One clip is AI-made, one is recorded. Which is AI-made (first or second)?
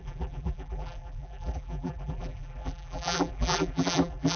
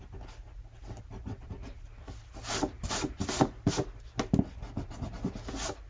first